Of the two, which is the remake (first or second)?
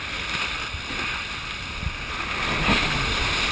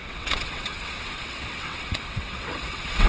second